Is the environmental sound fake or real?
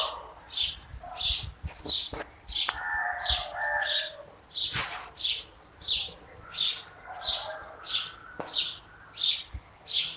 real